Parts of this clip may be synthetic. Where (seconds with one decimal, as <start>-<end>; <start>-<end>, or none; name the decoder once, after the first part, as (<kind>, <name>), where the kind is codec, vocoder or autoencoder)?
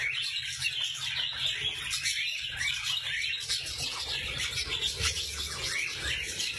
4.7-5.2 (vocoder, BigVGAN v2)